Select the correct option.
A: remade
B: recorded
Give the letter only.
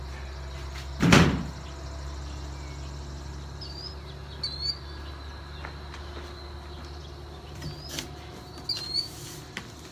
B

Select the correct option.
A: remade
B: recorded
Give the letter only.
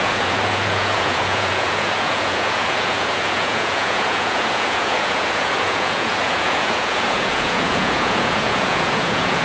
A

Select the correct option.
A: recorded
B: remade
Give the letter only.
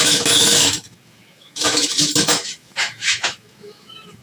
B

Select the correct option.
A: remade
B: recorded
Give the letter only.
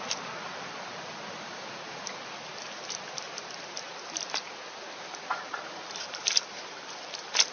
B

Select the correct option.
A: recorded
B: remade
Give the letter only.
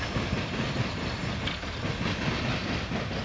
A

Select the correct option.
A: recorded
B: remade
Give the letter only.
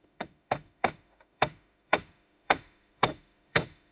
B